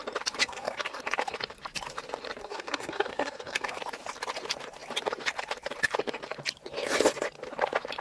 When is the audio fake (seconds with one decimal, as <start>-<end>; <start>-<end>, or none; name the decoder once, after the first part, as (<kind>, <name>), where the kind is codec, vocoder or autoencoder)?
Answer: 0.4-1.0 (codec, SNAC); 2.4-3.8